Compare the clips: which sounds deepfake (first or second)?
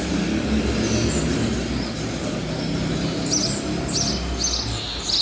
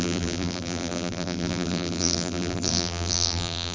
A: second